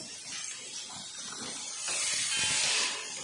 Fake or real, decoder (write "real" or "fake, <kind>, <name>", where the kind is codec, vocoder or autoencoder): real